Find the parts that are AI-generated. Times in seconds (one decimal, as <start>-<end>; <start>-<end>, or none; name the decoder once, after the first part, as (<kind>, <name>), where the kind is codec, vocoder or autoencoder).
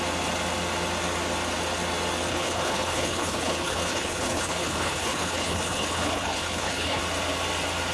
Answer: 2.3-7.0 (codec, HILCodec)